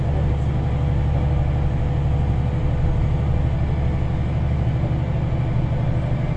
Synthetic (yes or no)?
no